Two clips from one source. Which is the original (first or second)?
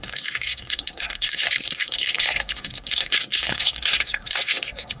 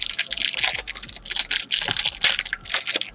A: second